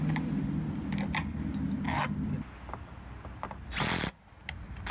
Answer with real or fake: real